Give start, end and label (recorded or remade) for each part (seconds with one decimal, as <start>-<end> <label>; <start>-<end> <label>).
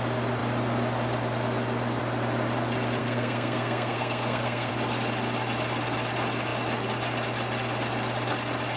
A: 0.0-3.0 recorded; 3.0-4.7 remade; 4.7-8.8 recorded